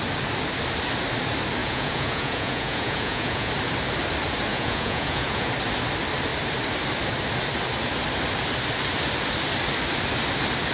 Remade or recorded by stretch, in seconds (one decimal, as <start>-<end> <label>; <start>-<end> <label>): 0.0-1.6 recorded; 1.6-3.5 remade; 3.5-4.5 recorded; 4.5-5.5 remade; 5.5-10.7 recorded